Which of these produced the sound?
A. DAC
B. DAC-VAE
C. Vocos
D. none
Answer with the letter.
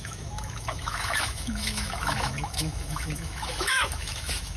B